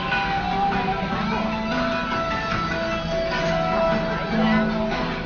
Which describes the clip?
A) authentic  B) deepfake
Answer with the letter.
A